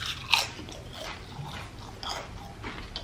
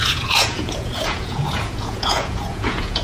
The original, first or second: first